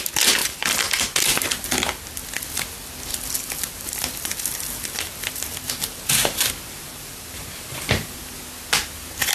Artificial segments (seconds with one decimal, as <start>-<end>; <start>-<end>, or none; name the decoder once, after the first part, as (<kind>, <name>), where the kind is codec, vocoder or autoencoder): 0.4-1.0 (vocoder, BigVGAN v2); 3.1-8.3

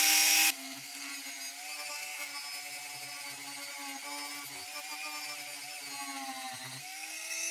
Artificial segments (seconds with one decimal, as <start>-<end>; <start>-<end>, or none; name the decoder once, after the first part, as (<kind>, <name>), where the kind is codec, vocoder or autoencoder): 0.0-1.1 (codec, SNAC); 1.9-2.3; 6.8-7.5

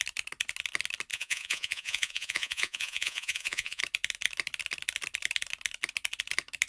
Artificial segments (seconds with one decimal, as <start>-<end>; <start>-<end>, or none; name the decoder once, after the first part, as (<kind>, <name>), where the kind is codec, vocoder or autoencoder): 1.1-3.8 (vocoder, Vocos)